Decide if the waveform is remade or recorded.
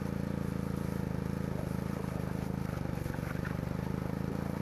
recorded